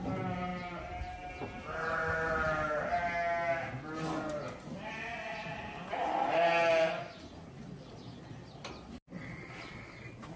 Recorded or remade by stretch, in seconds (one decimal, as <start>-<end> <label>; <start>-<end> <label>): 0.0-10.4 recorded